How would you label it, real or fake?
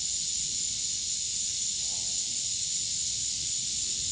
real